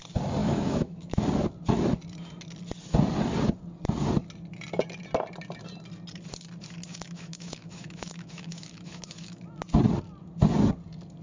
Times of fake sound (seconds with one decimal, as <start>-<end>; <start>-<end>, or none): 0.4-1.2; 6.9-9.4